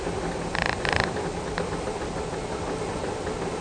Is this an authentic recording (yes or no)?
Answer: yes